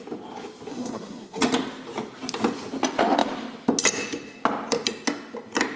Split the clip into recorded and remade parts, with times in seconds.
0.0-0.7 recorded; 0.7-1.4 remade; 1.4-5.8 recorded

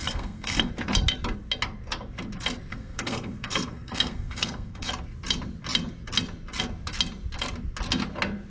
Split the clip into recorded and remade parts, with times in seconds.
0.0-0.7 remade; 0.7-2.7 recorded; 2.7-4.9 remade; 4.9-8.5 recorded

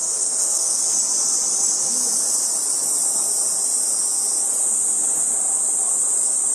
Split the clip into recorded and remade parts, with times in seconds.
0.0-0.8 remade; 0.8-6.5 recorded

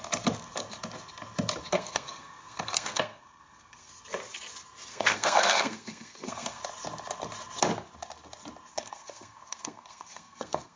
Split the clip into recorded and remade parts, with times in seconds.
0.0-1.7 recorded; 1.7-3.9 remade; 3.9-4.9 recorded; 4.9-6.6 remade; 6.6-8.7 recorded; 8.7-10.8 remade

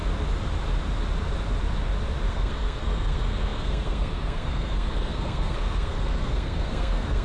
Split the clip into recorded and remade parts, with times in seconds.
0.0-2.3 recorded; 2.3-7.2 remade